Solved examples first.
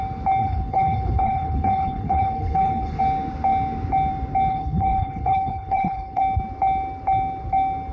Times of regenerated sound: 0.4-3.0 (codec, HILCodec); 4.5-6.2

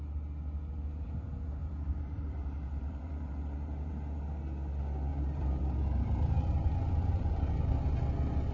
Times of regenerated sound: 1.6-3.9 (vocoder, BigVGAN v2); 5.1-7.6

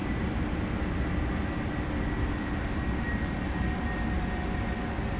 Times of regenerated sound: none

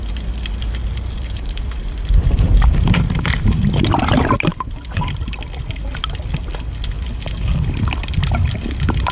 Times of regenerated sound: 0.8-3.5 (vocoder, BigVGAN v2)

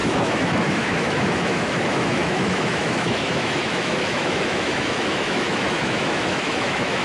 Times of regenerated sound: 0.0-7.0 (autoencoder, DAC-VAE)